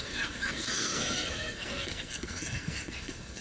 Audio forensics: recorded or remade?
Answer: remade